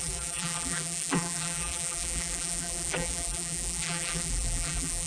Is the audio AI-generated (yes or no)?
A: yes